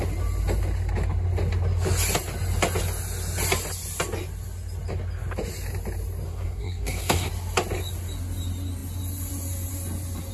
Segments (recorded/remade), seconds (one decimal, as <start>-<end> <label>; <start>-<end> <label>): 0.0-6.3 recorded; 6.3-7.3 remade; 7.3-10.3 recorded